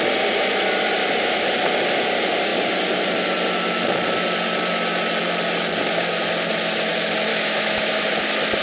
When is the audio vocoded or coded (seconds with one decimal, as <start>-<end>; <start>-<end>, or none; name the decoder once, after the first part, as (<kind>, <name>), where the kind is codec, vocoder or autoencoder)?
7.3-8.1 (autoencoder, DAC-VAE)